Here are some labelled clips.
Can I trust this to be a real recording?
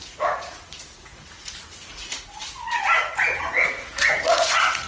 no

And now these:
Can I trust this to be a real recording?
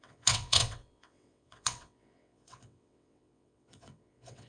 no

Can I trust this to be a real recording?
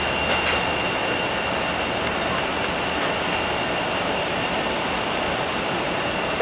yes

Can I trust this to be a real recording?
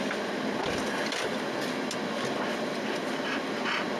yes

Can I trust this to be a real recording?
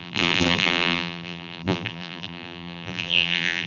no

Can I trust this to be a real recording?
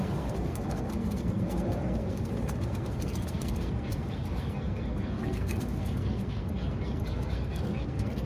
no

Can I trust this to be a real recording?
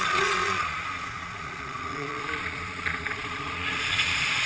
no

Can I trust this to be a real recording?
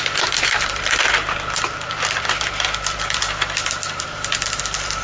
no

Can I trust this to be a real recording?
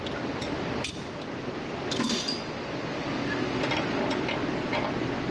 yes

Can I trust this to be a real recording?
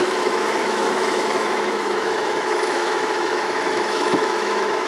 no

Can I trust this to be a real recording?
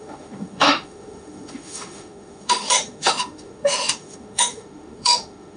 no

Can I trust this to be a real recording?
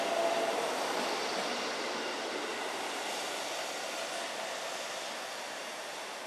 yes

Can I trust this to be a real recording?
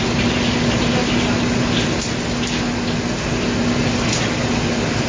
yes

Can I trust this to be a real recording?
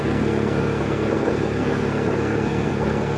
no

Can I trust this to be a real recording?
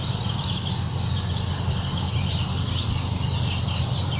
yes